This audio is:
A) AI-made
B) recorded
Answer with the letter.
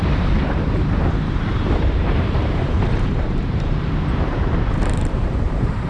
A